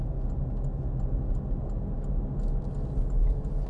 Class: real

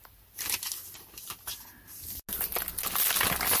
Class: real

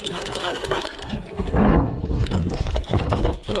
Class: fake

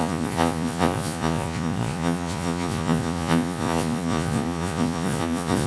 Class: fake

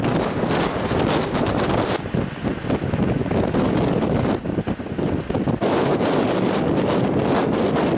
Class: real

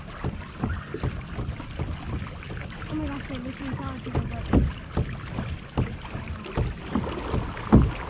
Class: real